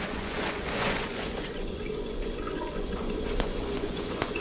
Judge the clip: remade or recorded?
remade